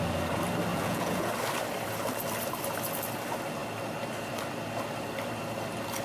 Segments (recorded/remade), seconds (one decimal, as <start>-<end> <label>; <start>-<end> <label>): 0.0-0.7 recorded; 0.7-1.3 remade; 1.3-6.0 recorded

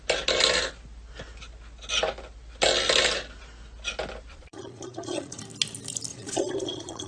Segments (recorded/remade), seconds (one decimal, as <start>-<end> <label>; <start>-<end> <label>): 0.0-4.3 recorded; 4.3-5.4 remade; 5.4-6.1 recorded; 6.1-7.1 remade

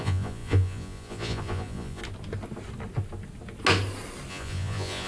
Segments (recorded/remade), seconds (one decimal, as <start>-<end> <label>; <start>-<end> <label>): 0.0-2.0 remade; 2.0-4.3 recorded; 4.3-5.1 remade